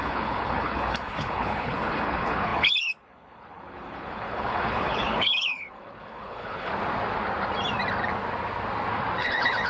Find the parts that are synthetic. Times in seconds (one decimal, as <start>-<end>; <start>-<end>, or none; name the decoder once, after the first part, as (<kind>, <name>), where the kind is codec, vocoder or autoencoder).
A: 0.0-6.7 (codec, HILCodec); 9.2-9.7